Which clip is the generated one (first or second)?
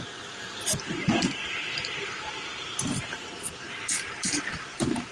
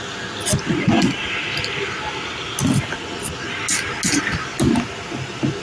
first